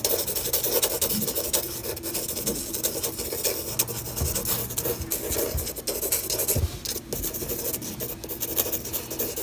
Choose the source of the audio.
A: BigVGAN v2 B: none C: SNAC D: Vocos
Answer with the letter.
B